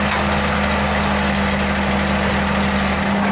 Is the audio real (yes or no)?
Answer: yes